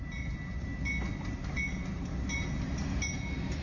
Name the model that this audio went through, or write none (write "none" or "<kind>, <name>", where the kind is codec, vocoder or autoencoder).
none